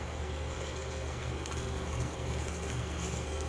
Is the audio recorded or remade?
remade